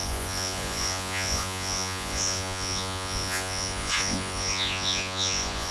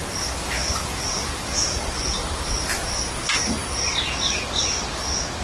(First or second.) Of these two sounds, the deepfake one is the first